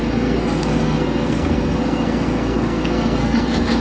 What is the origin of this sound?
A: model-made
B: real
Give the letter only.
A